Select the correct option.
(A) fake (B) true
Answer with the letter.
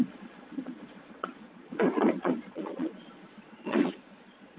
A